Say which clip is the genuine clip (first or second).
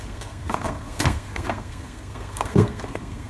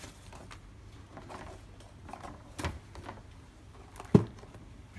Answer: second